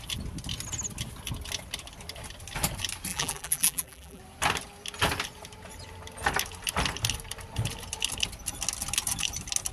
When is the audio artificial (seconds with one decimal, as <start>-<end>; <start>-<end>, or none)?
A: 3.1-4.2